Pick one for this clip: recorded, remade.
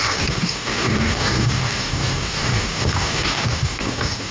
remade